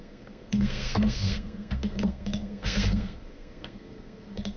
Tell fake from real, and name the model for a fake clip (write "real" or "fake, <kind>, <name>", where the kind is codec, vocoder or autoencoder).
fake, codec, SNAC